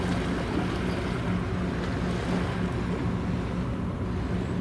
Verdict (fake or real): real